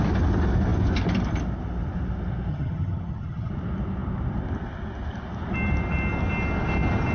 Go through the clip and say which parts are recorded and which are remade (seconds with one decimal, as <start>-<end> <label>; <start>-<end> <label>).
0.0-2.5 recorded; 2.5-3.5 remade; 3.5-7.1 recorded